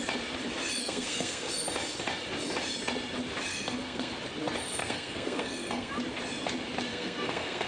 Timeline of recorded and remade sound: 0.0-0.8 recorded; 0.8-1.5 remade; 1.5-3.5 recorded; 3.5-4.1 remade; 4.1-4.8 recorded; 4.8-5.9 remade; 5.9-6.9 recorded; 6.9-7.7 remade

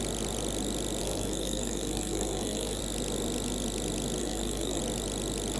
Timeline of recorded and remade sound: 0.0-1.0 recorded; 1.0-2.8 remade; 2.8-4.2 recorded; 4.2-4.8 remade; 4.8-5.6 recorded